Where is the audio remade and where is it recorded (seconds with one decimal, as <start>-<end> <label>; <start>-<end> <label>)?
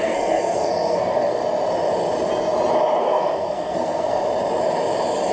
0.0-1.4 remade; 1.4-3.0 recorded; 3.0-4.2 remade; 4.2-5.3 recorded